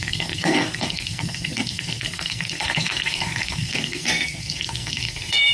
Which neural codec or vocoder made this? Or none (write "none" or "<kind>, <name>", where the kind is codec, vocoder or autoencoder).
codec, SNAC